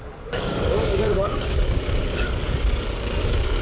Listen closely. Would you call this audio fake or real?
fake